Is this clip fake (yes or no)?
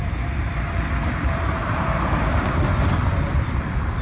yes